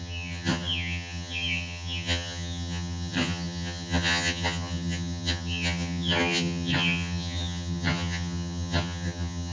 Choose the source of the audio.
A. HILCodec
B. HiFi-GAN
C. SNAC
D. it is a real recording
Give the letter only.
B